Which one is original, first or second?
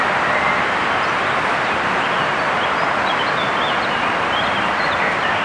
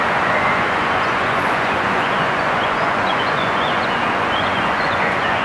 first